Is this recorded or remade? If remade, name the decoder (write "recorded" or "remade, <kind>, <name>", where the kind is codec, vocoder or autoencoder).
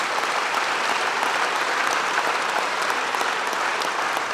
recorded